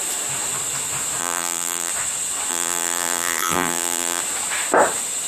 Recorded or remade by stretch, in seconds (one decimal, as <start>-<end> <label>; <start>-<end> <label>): 0.0-1.2 recorded; 1.2-1.9 remade; 1.9-2.5 recorded; 2.5-4.2 remade; 4.2-5.3 recorded